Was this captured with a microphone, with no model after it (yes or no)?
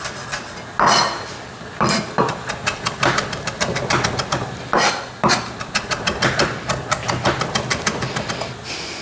yes